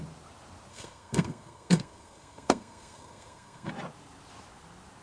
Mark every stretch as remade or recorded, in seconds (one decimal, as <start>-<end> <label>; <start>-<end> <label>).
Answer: 0.0-0.7 recorded; 0.7-3.7 remade; 3.7-5.0 recorded